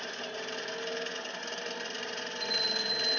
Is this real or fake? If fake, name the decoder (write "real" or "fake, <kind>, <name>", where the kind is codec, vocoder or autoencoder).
real